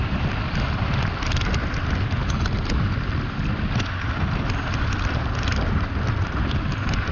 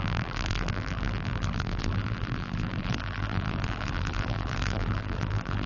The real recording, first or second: first